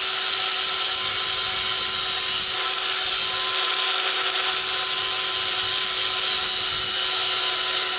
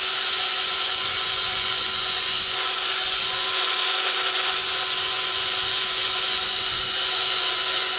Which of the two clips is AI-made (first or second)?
second